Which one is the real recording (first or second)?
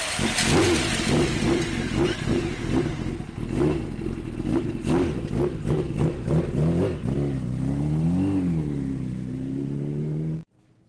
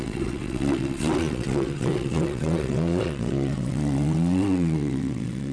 first